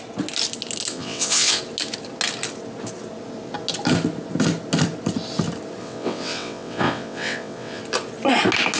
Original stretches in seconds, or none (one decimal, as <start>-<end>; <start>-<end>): 0.0-0.9; 1.6-5.8; 7.8-8.8